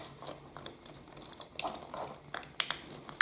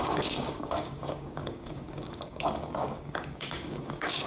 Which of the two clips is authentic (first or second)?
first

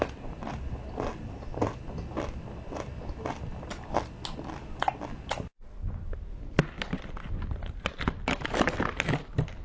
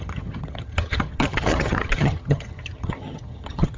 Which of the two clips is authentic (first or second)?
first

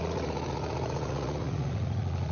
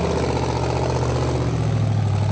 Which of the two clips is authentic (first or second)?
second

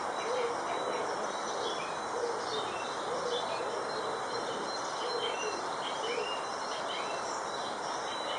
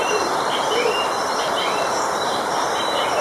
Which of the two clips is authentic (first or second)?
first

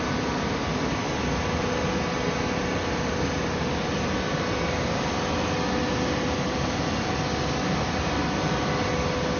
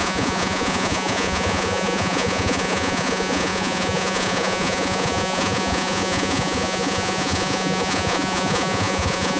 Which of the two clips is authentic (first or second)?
first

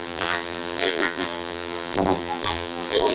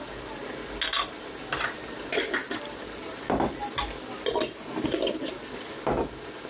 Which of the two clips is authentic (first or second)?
second